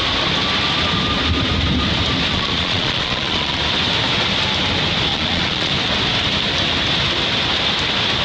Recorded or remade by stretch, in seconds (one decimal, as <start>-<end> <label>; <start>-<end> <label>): 0.0-2.3 recorded; 2.3-3.6 remade; 3.6-5.1 recorded; 5.1-5.7 remade; 5.7-8.2 recorded